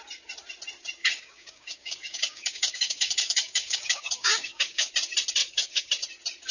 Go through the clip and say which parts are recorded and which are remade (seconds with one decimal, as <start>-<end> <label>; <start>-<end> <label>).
0.0-1.0 recorded; 1.0-4.9 remade; 4.9-5.4 recorded; 5.4-5.9 remade; 5.9-6.5 recorded